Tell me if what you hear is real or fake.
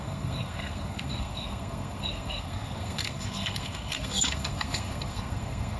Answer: fake